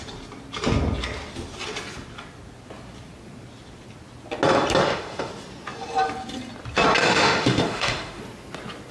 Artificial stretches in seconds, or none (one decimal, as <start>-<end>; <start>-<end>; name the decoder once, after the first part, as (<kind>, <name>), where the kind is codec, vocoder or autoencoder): 4.8-5.3 (autoencoder, DAC-VAE); 7.0-8.2